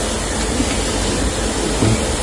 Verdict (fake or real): real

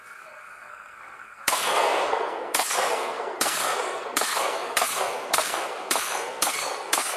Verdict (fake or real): fake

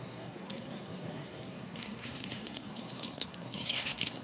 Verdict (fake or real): fake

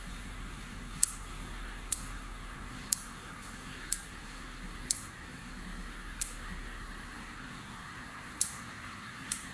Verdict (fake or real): fake